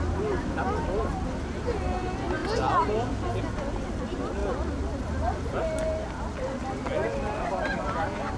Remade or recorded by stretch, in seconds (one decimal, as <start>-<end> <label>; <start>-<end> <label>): 0.0-8.4 recorded